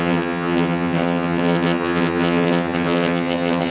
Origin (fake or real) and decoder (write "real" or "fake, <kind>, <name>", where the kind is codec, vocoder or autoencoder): fake, vocoder, HiFi-GAN